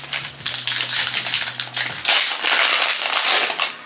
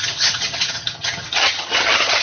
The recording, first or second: first